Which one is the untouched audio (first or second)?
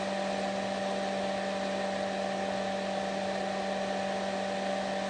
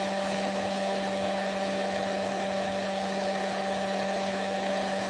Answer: first